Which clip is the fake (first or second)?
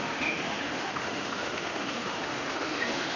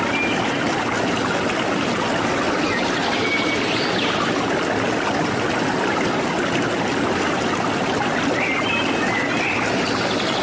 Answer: first